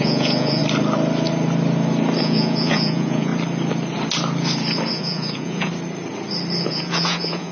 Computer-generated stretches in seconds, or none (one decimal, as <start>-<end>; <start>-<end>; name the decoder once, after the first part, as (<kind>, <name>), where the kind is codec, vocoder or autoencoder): 0.0-0.6 (vocoder, Vocos); 2.2-3.3; 4.9-5.7; 6.6-7.5